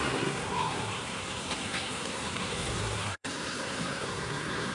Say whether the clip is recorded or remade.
remade